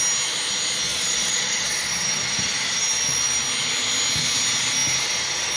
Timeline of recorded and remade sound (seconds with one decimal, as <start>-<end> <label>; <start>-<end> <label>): 0.0-0.9 recorded; 0.9-1.9 remade; 1.9-5.6 recorded